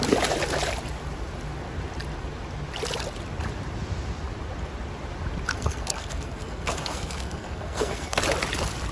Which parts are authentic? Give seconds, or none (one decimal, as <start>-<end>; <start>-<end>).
0.0-5.5; 8.2-8.9